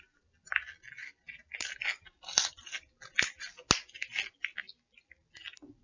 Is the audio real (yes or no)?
yes